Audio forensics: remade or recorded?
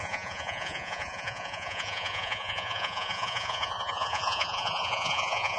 remade